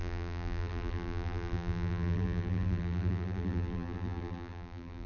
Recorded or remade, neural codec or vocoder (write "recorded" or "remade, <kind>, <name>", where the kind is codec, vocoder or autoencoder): remade, vocoder, BigVGAN v2